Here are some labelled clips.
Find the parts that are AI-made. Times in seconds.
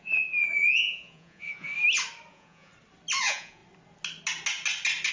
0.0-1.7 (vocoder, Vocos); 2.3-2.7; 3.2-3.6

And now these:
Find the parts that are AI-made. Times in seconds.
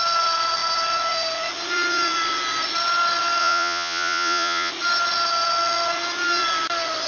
3.4-4.7 (vocoder, Vocos)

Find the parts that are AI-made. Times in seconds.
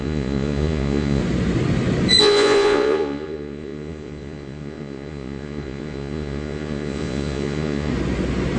0.0-1.2 (vocoder, Vocos); 2.2-7.9